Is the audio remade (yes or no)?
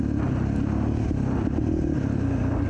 no